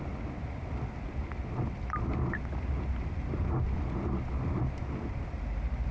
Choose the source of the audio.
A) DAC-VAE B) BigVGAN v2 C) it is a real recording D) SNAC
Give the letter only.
C